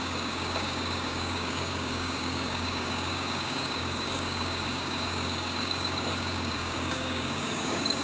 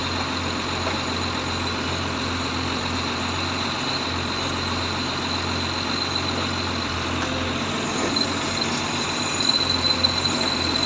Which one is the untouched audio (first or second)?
second